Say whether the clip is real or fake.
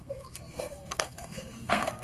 fake